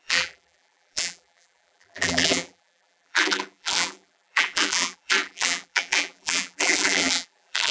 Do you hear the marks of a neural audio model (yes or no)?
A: yes